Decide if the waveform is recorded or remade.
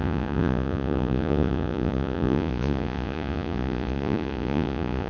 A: remade